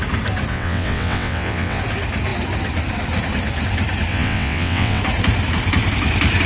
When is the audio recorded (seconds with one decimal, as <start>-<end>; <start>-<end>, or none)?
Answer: 0.0-0.5; 1.8-4.1; 5.0-6.5